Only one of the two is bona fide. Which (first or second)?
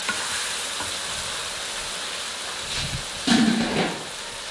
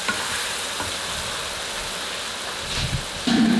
second